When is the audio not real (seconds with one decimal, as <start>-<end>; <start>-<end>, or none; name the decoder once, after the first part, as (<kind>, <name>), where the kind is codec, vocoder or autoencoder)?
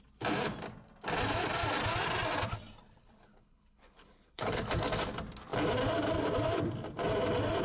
3.0-4.7 (codec, HILCodec)